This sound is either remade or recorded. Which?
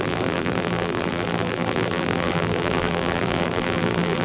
remade